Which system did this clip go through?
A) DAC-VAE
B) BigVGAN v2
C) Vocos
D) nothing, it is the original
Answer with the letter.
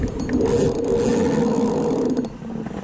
D